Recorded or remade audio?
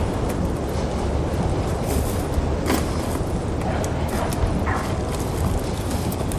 recorded